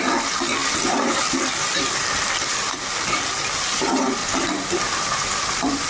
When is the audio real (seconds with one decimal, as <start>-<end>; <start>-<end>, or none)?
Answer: 0.0-0.6; 1.9-4.2